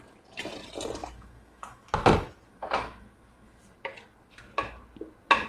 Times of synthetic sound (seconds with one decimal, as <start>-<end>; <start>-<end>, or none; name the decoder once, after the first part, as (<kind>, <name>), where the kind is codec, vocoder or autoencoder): 1.0-1.9 (autoencoder, DAC-VAE); 2.5-3.6